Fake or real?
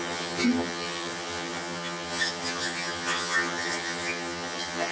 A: fake